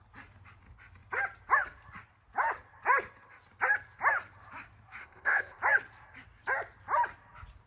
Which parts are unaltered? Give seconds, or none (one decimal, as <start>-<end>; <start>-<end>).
0.0-5.0; 5.6-7.7